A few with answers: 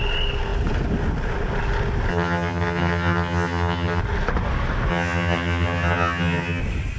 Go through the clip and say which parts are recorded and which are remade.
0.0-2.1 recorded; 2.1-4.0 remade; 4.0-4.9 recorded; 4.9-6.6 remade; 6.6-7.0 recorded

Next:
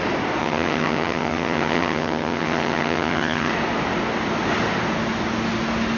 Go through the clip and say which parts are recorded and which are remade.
0.0-0.4 recorded; 0.4-3.5 remade; 3.5-6.0 recorded

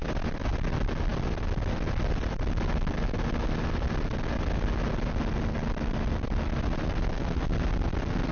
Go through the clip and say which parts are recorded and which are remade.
0.0-8.3 recorded

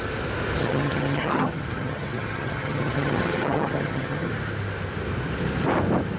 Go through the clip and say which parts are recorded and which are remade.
0.0-0.6 recorded; 0.6-4.3 remade; 4.3-6.2 recorded

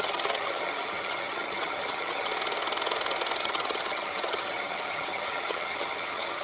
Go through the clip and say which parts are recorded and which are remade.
0.0-2.3 remade; 2.3-3.4 recorded; 3.4-6.4 remade